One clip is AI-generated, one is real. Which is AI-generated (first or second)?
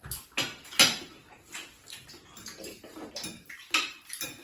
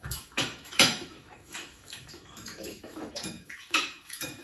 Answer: second